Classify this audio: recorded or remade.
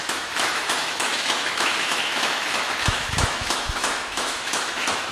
remade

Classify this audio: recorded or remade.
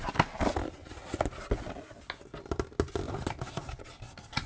recorded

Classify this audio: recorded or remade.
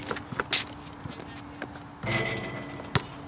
recorded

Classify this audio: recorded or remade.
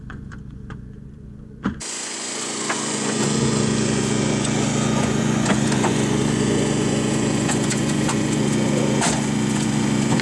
remade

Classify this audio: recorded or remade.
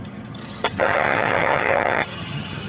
remade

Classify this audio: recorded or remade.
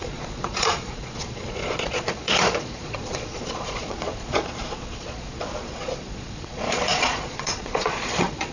remade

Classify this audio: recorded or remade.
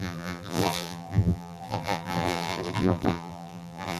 remade